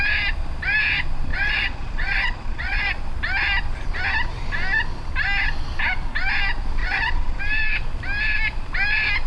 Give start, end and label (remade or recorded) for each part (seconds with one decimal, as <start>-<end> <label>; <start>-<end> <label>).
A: 0.0-1.3 recorded; 1.3-2.9 remade; 2.9-6.8 recorded; 6.8-7.4 remade; 7.4-9.3 recorded